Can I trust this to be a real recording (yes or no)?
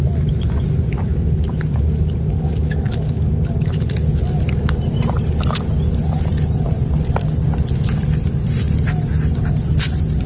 yes